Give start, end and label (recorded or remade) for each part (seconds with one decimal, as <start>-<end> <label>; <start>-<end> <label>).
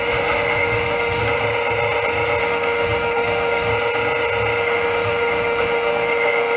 0.0-1.2 remade; 1.2-2.4 recorded; 2.4-3.7 remade; 3.7-4.6 recorded; 4.6-6.6 remade